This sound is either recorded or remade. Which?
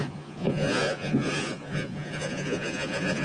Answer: remade